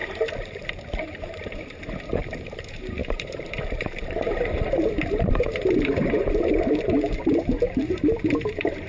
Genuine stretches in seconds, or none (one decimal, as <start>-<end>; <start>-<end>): none

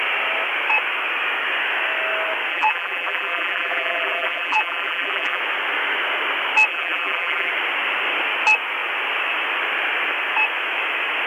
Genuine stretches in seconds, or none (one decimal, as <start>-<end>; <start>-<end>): 0.0-2.5; 5.4-6.7; 7.5-11.3

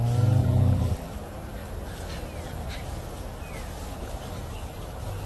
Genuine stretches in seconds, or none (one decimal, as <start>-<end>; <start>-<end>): 0.0-0.4; 1.1-5.3

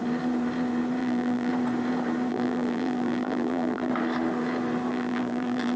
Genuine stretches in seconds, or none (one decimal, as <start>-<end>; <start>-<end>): 0.0-1.0; 1.5-2.3; 3.9-4.9

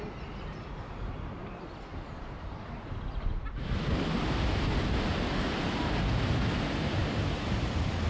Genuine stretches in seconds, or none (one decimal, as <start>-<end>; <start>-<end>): 0.0-1.9; 2.6-7.0; 7.5-8.1